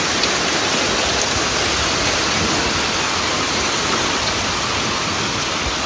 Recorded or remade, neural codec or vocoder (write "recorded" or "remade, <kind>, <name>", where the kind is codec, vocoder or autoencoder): recorded